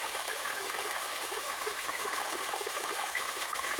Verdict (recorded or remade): remade